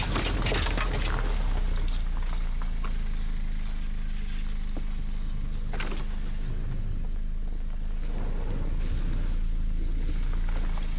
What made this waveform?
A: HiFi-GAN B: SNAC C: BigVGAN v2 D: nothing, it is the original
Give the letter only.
D